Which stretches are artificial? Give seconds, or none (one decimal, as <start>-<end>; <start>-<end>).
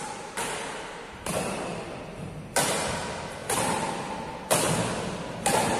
1.7-2.9